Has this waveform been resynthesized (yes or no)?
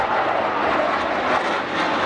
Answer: no